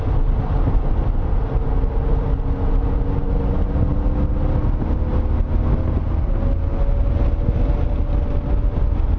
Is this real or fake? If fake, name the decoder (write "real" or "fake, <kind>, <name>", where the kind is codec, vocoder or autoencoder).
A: real